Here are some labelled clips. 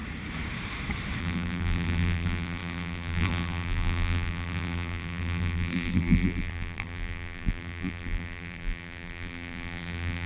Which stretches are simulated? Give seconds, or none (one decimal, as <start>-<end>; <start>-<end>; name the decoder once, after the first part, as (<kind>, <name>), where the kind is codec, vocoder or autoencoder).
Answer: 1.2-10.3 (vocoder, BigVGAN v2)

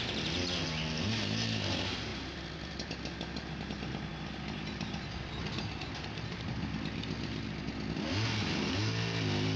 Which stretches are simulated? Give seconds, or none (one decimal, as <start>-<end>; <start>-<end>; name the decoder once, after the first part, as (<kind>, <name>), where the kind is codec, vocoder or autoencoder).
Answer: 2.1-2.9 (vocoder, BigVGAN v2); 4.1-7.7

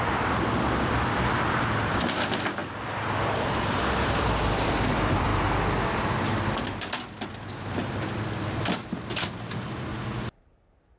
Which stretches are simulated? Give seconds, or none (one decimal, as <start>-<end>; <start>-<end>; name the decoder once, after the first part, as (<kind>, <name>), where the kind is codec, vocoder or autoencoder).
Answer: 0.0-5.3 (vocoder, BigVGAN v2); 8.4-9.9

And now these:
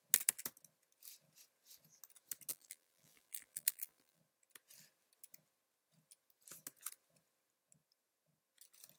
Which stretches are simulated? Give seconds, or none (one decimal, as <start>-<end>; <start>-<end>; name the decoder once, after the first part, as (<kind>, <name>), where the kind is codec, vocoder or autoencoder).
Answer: 2.5-4.2 (vocoder, BigVGAN v2)

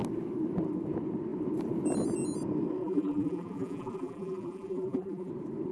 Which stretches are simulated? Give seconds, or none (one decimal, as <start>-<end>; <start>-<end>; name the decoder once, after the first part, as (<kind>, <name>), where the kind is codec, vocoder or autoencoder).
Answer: 2.8-5.3 (vocoder, BigVGAN v2)

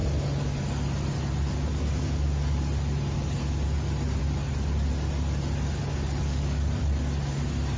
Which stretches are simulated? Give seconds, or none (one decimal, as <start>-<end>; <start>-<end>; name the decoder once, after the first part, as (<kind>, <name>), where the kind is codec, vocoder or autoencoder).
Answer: none

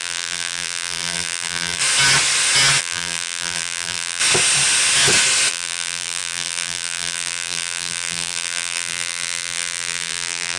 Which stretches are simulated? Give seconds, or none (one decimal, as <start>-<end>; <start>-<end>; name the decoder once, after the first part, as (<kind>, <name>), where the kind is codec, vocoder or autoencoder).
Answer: 0.0-1.8 (vocoder, BigVGAN v2); 2.8-4.2; 5.5-10.6